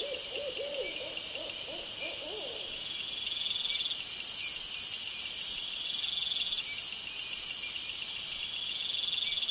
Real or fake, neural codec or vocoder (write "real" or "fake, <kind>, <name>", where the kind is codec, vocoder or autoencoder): real